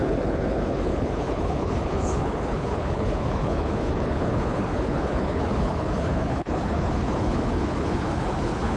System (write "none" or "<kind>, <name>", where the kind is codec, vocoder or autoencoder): codec, HILCodec